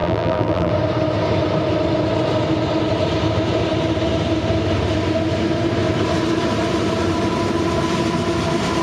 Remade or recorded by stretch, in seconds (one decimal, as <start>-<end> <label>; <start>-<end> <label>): 0.0-0.7 remade; 0.7-8.8 recorded